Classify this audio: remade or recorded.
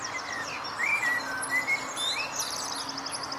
recorded